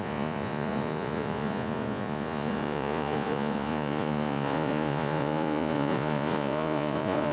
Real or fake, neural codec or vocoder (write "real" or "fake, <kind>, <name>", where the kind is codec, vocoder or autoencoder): fake, vocoder, Vocos